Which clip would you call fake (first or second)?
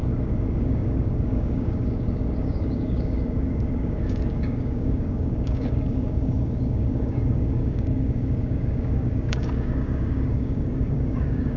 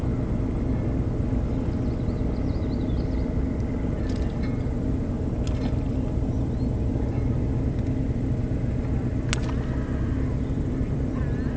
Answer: first